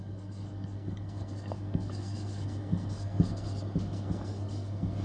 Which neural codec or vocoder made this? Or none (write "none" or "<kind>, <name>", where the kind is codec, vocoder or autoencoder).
codec, SNAC